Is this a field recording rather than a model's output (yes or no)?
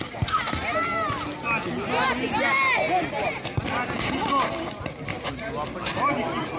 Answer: yes